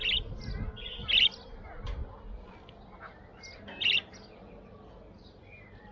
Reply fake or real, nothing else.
real